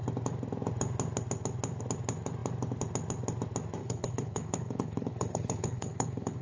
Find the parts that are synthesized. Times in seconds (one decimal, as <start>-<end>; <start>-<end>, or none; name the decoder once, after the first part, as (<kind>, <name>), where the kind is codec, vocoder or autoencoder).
3.8-6.4 (codec, HILCodec)